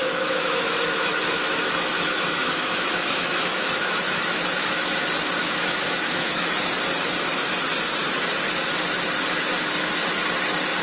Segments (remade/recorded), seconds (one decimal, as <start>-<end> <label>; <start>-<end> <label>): 0.0-4.9 remade; 4.9-5.4 recorded; 5.4-6.5 remade; 6.5-10.8 recorded